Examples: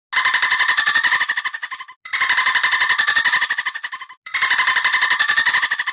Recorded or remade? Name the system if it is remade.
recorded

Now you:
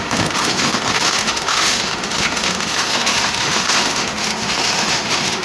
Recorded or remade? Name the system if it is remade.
remade, autoencoder, DAC-VAE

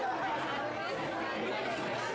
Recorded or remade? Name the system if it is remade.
recorded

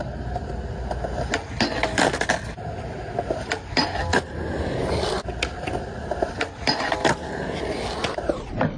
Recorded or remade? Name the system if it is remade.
recorded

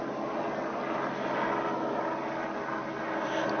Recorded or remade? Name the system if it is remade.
recorded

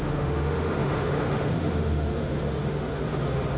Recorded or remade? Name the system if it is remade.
remade, autoencoder, DAC-VAE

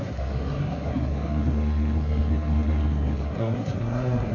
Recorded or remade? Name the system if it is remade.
remade, codec, SNAC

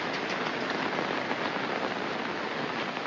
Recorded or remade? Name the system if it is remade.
recorded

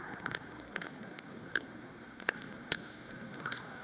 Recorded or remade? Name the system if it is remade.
remade, codec, SNAC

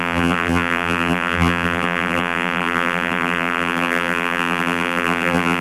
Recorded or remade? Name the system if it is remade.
remade, vocoder, BigVGAN v2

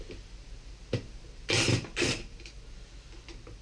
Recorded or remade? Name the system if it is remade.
recorded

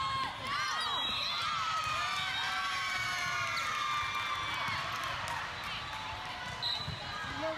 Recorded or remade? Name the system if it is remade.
recorded